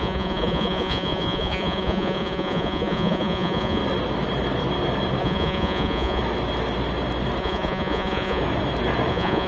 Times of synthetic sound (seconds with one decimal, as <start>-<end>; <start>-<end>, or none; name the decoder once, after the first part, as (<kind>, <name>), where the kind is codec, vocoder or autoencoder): 0.0-3.8 (vocoder, Vocos); 5.2-6.2; 7.4-8.4; 9.1-9.5